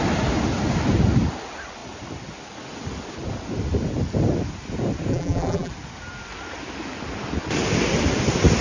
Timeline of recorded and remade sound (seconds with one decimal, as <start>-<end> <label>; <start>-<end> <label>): 0.0-5.1 recorded; 5.1-5.7 remade; 5.7-8.6 recorded